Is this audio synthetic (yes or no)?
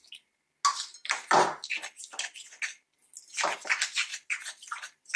no